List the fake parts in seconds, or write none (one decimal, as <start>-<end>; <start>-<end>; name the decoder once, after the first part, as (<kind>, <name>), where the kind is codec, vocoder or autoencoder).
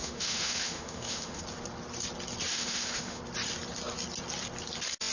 0.0-1.4 (autoencoder, DAC-VAE); 2.5-3.2